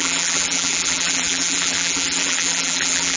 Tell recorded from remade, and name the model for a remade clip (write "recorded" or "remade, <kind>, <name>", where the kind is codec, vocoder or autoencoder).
remade, vocoder, BigVGAN v2